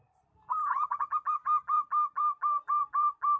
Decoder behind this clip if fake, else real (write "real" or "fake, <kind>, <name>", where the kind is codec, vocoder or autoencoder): fake, vocoder, BigVGAN v2